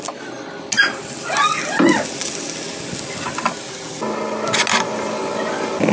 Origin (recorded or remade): recorded